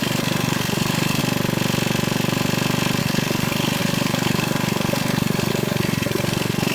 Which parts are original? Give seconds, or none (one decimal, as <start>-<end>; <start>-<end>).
1.2-3.0